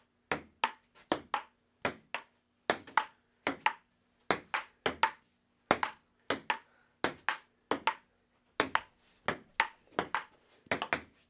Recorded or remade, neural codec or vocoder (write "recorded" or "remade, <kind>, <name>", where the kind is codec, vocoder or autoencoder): recorded